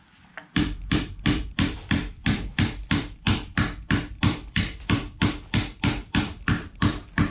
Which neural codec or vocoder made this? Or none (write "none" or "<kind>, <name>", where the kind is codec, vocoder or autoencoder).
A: vocoder, BigVGAN v2